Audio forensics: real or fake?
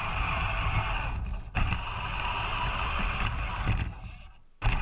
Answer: real